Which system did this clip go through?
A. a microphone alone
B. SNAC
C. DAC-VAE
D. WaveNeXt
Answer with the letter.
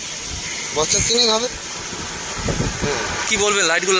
A